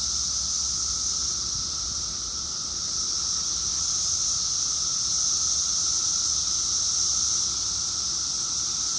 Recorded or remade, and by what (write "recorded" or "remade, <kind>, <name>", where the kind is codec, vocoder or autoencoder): recorded